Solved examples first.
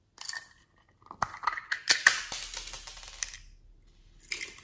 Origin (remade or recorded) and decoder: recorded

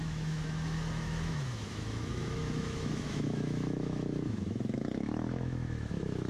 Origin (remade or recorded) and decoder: remade, autoencoder, DAC-VAE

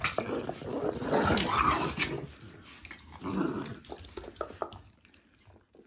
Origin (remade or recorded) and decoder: recorded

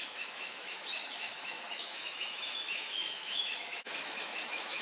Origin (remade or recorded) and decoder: remade, autoencoder, DAC-VAE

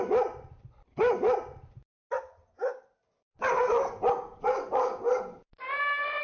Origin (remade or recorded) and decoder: recorded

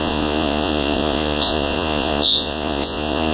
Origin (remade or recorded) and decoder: remade, vocoder, Vocos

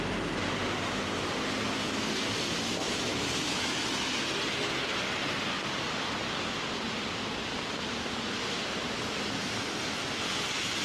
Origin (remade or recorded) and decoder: recorded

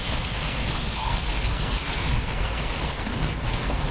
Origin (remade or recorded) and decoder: remade, codec, SNAC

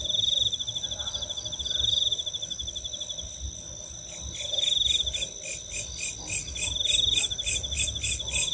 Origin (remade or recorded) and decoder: recorded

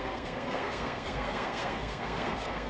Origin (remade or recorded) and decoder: remade, codec, SNAC